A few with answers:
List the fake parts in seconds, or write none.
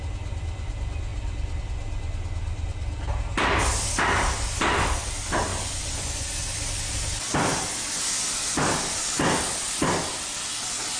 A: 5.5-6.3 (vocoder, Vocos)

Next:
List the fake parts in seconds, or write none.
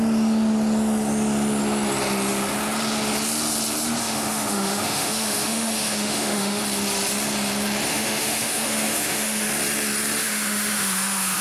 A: 4.0-6.6 (autoencoder, DAC-VAE); 7.9-9.5; 10.2-11.4